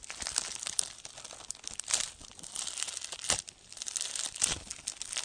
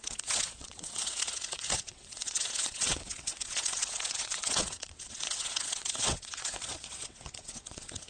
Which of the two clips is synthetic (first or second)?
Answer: second